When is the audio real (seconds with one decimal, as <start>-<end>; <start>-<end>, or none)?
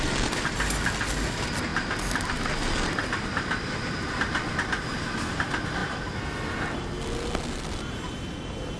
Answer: 0.0-8.8